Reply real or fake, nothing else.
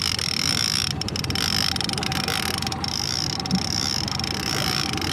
real